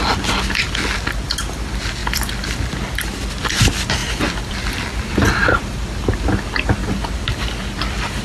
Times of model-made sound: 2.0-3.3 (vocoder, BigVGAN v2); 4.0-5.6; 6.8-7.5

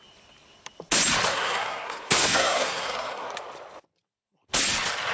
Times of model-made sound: 1.3-3.3 (codec, SNAC)

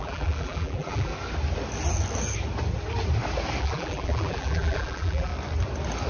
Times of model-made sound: 0.0-1.1 (vocoder, BigVGAN v2); 3.6-5.3

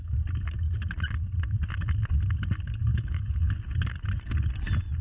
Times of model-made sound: 2.9-3.5 (codec, HILCodec)

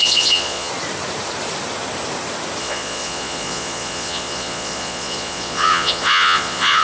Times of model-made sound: 0.0-0.7 (vocoder, Vocos); 2.6-6.8

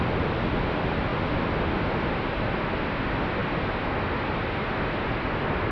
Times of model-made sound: none

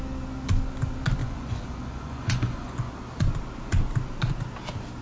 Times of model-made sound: 1.2-2.9 (vocoder, Vocos)

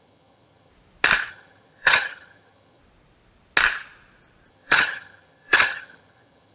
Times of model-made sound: 0.0-0.7 (vocoder, HiFi-GAN); 1.3-2.8; 4.5-6.5